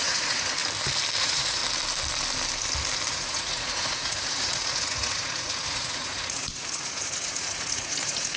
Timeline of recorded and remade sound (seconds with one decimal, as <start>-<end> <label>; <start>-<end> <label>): 0.0-0.6 remade; 0.6-1.2 recorded; 1.2-1.6 remade; 1.6-3.1 recorded; 3.1-8.4 remade